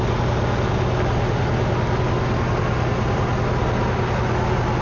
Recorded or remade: recorded